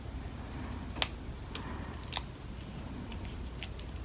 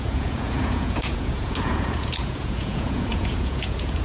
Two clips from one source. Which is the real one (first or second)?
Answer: first